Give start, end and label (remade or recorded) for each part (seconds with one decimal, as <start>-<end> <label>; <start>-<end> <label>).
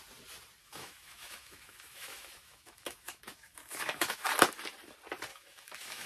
0.0-0.6 recorded; 0.6-4.3 remade; 4.3-5.3 recorded; 5.3-6.1 remade